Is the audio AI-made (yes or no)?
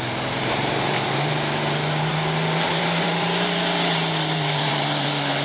yes